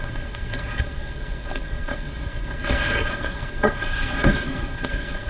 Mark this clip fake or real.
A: fake